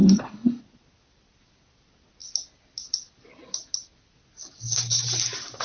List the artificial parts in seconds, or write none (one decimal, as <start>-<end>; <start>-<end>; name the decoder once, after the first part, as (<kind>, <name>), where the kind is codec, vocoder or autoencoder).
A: 0.0-0.6 (codec, HILCodec)